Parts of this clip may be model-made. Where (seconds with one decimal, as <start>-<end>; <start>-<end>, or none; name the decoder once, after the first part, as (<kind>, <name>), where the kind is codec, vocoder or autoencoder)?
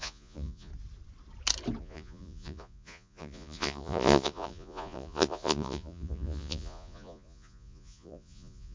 0.0-0.7 (vocoder, Vocos); 1.8-8.7